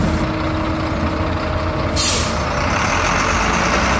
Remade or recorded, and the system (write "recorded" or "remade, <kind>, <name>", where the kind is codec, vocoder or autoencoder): recorded